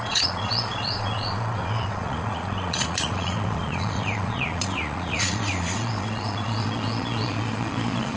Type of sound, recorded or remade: remade